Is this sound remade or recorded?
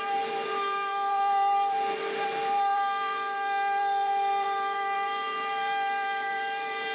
remade